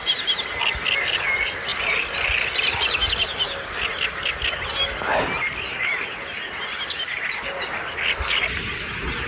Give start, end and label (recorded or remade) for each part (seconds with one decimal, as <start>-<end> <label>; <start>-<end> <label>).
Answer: 0.0-9.3 recorded

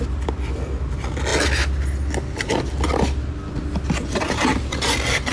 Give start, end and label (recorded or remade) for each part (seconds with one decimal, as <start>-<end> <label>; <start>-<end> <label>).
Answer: 0.0-5.3 recorded

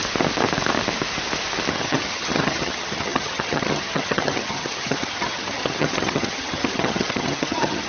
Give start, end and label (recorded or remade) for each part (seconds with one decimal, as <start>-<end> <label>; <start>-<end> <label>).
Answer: 0.0-1.7 recorded; 1.7-7.9 remade

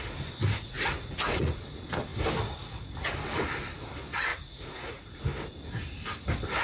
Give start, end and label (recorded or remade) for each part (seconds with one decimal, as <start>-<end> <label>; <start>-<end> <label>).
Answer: 0.0-0.4 recorded; 0.4-1.6 remade; 1.6-4.3 recorded; 4.3-5.2 remade; 5.2-6.6 recorded

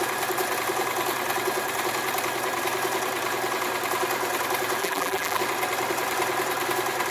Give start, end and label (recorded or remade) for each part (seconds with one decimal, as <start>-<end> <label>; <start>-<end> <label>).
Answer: 0.0-4.8 recorded; 4.8-5.4 remade; 5.4-7.1 recorded